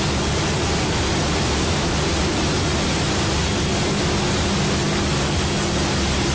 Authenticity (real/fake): real